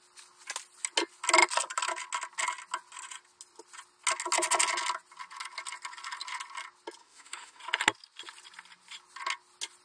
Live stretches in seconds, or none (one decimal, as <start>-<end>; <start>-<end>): 0.0-7.0; 7.6-9.8